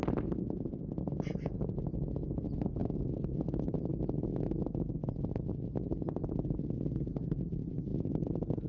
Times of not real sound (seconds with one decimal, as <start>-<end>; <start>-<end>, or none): none